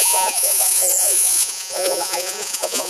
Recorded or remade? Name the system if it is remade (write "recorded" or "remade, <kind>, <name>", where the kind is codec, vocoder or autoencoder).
remade, vocoder, Vocos